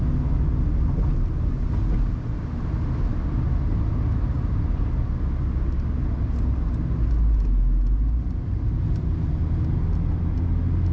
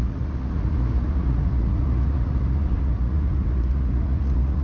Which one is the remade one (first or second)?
second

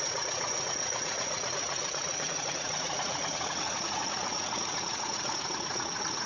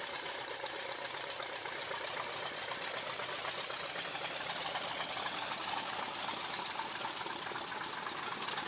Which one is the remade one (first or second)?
first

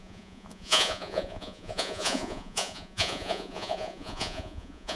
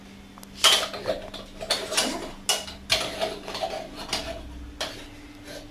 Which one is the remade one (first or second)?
first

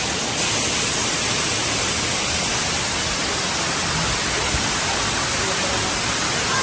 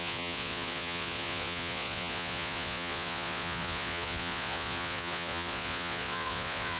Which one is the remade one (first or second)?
second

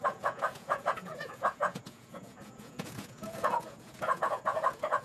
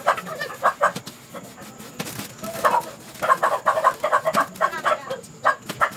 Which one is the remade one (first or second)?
first